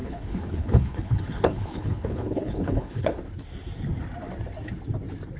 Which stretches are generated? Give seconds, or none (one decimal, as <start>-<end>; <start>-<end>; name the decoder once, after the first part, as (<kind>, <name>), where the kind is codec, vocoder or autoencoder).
0.0-3.2 (codec, HILCodec)